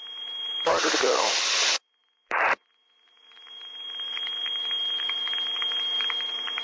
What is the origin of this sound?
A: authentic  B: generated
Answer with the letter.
B